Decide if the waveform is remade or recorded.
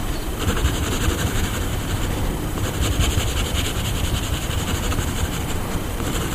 remade